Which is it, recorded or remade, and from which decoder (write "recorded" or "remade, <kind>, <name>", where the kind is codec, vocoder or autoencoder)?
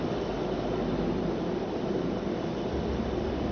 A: recorded